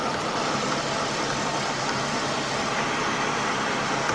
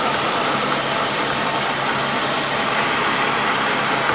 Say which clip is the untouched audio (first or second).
second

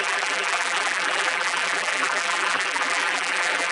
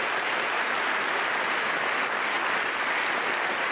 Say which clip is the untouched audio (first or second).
second